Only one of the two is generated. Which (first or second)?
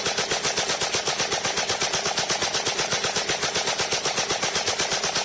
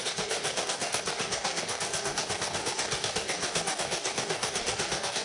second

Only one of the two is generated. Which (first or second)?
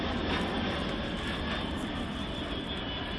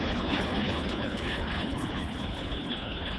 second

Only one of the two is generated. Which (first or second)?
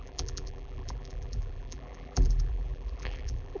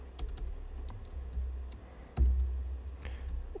first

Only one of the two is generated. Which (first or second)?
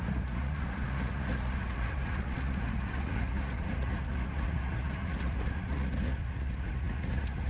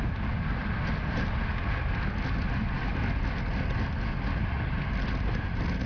first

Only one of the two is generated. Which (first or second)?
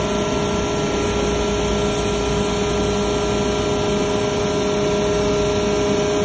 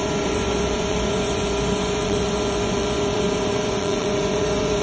second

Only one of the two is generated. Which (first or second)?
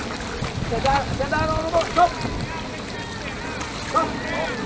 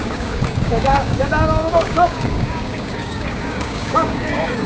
second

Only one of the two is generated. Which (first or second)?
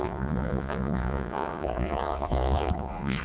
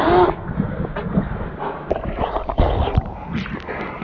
first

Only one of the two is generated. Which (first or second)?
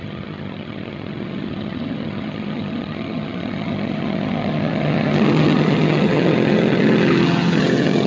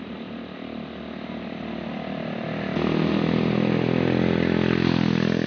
first